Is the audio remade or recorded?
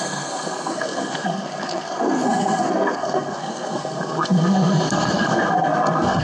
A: remade